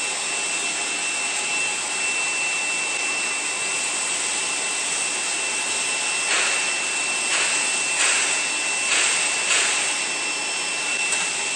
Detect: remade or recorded recorded